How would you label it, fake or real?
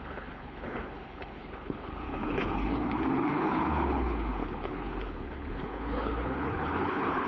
fake